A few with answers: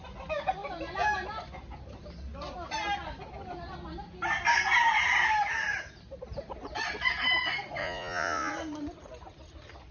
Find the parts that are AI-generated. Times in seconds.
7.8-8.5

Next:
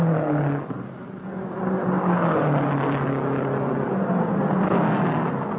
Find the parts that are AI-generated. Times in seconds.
none

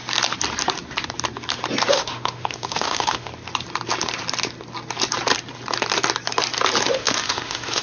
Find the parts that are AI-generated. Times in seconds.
1.9-3.3; 6.9-7.8

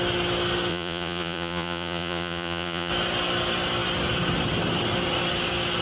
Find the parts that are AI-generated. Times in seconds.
0.7-2.9

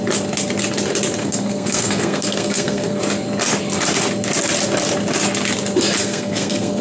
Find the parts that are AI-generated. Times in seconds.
1.2-3.0; 6.0-6.8